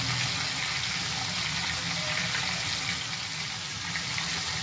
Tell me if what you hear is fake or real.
real